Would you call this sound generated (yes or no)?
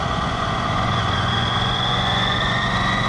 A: yes